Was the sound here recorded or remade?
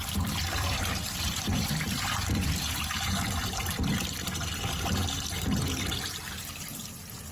remade